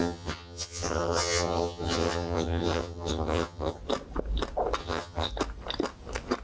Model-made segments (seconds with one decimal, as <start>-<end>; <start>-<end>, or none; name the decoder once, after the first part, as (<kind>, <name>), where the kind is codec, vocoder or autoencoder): 0.0-3.8 (vocoder, HiFi-GAN); 4.8-5.3